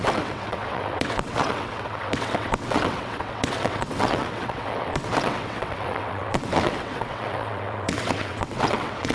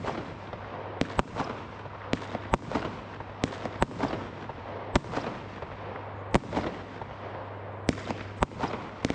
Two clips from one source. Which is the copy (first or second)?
first